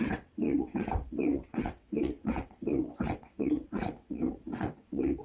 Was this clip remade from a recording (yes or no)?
yes